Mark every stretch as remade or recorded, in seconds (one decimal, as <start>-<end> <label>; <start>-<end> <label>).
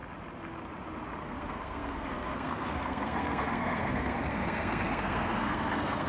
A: 0.0-1.2 recorded; 1.2-6.1 remade